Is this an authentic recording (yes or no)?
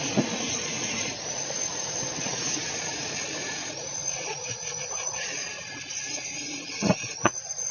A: no